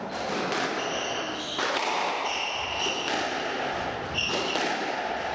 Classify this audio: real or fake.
real